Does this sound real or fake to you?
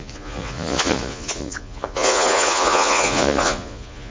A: fake